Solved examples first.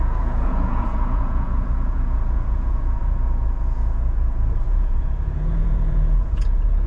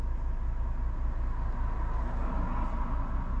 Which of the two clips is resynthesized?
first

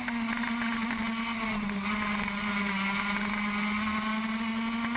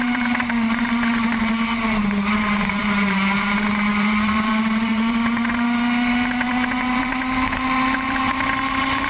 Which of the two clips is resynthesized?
second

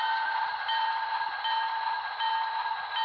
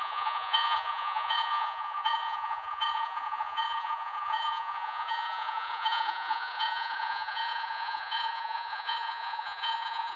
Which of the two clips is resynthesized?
second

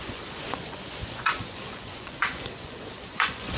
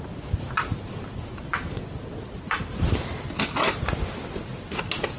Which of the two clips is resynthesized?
first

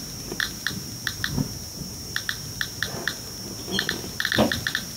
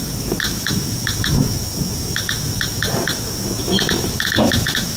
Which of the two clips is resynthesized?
second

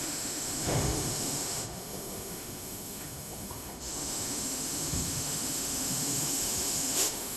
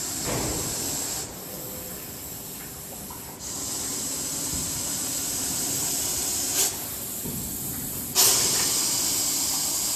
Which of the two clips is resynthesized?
first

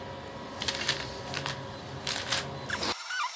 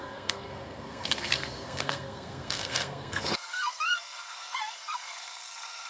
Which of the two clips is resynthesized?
second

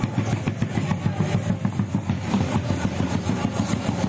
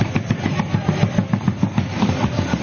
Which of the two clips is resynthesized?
second